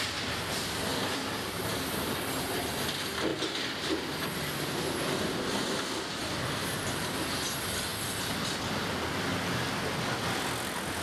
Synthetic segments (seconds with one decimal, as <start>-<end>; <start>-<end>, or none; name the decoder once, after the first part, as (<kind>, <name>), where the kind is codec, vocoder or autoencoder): 0.9-1.6 (vocoder, BigVGAN v2)